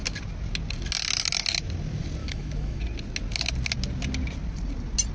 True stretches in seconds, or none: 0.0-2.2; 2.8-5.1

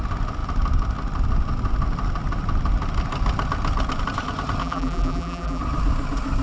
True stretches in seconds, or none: 0.0-4.6; 5.6-6.4

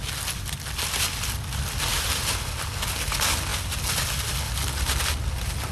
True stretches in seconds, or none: 0.0-1.9; 2.4-5.7

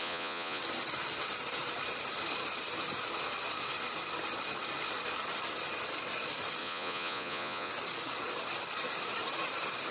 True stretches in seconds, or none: 0.6-6.6; 7.7-9.9

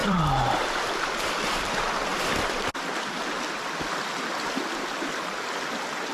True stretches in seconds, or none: 0.5-6.1

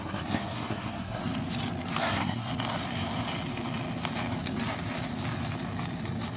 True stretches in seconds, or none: 1.2-2.0; 2.5-6.4

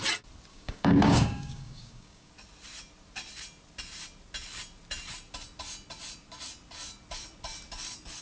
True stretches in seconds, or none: 0.0-0.5; 2.3-8.2

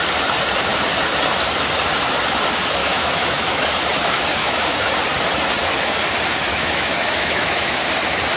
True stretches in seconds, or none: 0.0-2.8; 3.7-4.4; 4.9-6.5; 7.8-8.4